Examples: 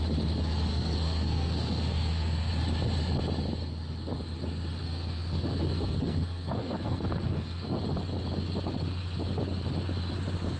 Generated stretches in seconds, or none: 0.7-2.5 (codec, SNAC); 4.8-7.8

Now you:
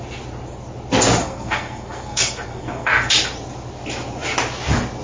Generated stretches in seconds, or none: 1.2-3.1 (codec, SNAC)

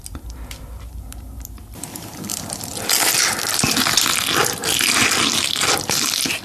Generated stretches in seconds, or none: none

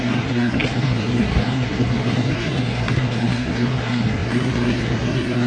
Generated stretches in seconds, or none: 0.0-5.5 (codec, SNAC)

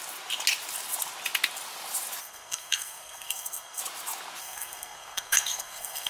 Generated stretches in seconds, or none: 2.2-3.8 (codec, SNAC); 4.4-6.1